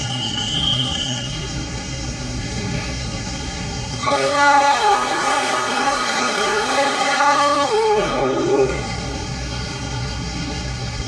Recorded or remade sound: remade